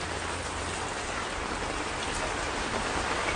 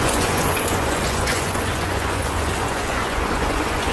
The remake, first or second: second